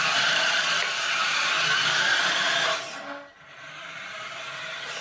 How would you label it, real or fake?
real